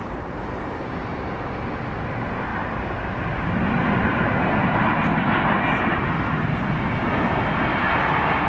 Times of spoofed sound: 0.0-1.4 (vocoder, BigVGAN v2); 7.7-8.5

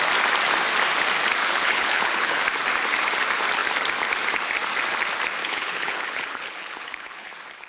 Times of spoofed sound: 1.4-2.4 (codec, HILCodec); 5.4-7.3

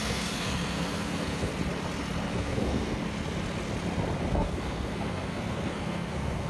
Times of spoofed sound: 0.0-1.5 (codec, SNAC); 2.3-3.0; 4.3-6.5